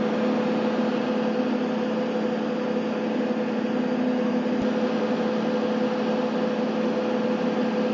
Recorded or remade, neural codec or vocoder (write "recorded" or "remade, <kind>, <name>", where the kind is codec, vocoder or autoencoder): recorded